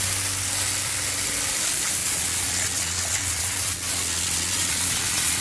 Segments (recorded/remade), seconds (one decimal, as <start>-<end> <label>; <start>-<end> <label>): 0.0-2.0 recorded; 2.0-5.4 remade